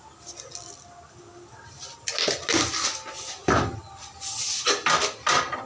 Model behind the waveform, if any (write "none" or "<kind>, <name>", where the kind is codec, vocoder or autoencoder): none